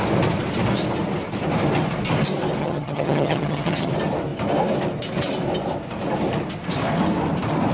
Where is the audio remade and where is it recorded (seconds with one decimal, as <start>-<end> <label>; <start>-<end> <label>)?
0.0-2.6 recorded; 2.6-3.9 remade; 3.9-7.7 recorded